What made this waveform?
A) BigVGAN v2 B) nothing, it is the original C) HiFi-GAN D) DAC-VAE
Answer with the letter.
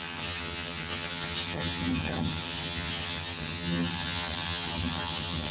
C